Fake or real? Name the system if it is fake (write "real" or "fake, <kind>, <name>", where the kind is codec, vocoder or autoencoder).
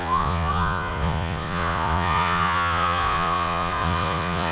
fake, vocoder, Vocos